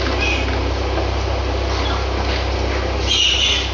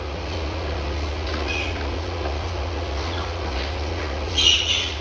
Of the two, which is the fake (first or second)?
second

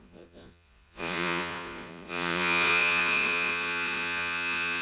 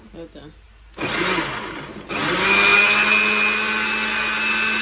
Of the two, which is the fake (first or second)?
first